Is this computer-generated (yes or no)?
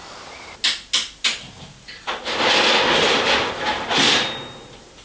no